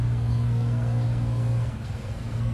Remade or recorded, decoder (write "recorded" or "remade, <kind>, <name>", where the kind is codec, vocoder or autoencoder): remade, codec, SNAC